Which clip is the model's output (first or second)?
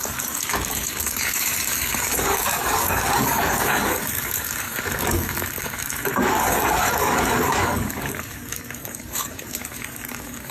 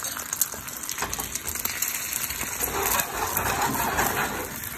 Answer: first